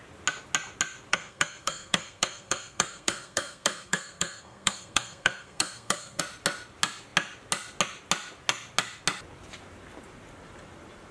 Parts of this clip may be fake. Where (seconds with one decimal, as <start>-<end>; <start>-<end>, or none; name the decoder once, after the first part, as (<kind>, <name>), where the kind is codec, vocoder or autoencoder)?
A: 1.1-6.2 (codec, SNAC)